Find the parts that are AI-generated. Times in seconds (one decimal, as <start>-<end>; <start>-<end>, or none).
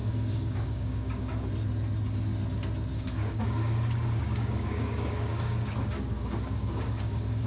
0.0-1.5; 2.9-7.5